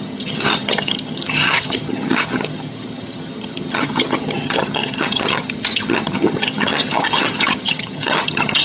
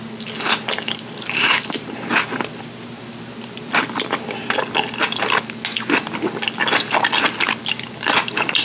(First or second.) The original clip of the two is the second